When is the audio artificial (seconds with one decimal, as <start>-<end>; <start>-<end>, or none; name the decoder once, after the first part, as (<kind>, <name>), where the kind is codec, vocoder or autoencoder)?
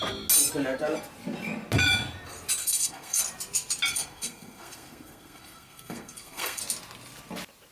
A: 2.6-3.2 (codec, SNAC); 3.9-6.6